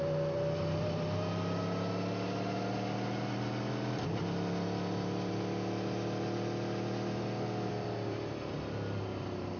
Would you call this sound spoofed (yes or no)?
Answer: no